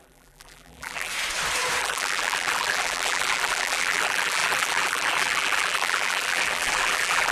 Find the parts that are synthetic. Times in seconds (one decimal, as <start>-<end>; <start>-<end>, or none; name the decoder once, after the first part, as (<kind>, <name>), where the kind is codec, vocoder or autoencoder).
0.0-1.1 (vocoder, BigVGAN v2); 1.8-7.3